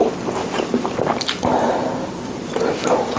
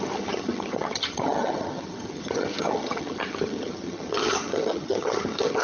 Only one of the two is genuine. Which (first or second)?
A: first